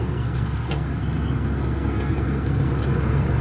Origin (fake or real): fake